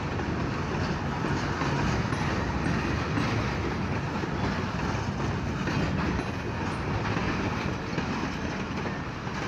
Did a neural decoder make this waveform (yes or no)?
no